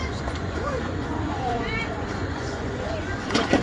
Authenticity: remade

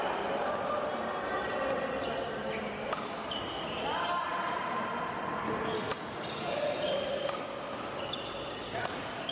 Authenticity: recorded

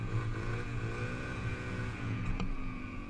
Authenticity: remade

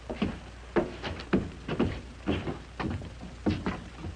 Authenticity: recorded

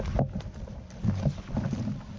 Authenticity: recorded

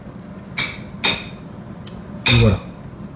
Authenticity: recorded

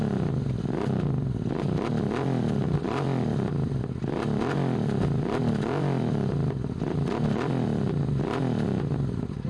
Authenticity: recorded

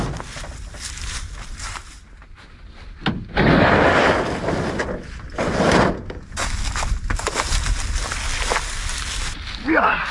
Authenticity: recorded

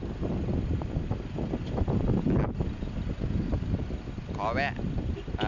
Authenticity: recorded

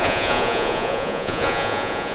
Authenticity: remade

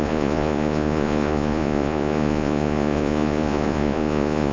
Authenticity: remade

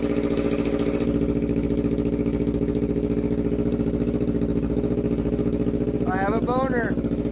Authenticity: recorded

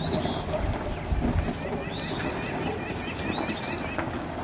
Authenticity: recorded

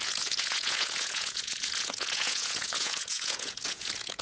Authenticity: remade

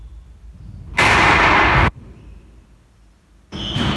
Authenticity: recorded